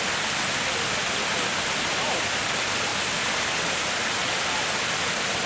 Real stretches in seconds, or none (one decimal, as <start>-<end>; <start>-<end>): 0.0-2.9; 4.1-5.5